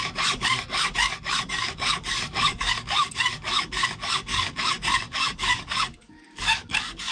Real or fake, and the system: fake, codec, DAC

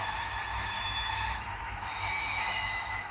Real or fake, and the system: fake, autoencoder, DAC-VAE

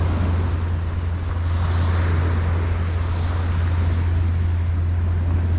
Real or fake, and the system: real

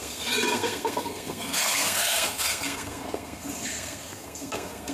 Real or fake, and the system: fake, codec, SNAC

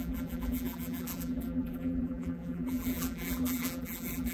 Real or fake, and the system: fake, vocoder, BigVGAN v2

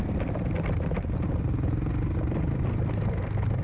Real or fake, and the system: real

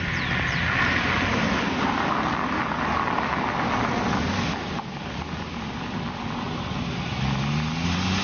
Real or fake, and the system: real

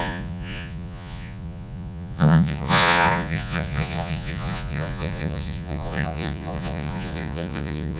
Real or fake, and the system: fake, vocoder, Vocos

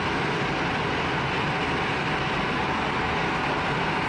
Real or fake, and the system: real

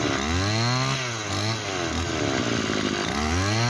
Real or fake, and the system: real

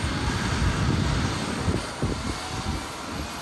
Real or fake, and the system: real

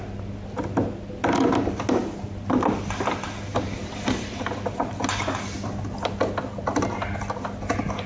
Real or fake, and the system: real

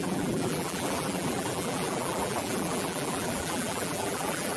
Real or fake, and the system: fake, vocoder, BigVGAN v2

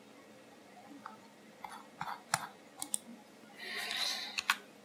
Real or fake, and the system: real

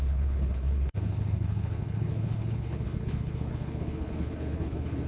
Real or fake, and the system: fake, codec, HILCodec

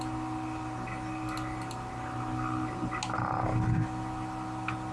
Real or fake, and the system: real